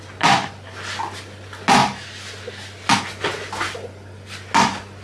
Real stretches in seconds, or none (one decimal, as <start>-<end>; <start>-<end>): 0.0-5.0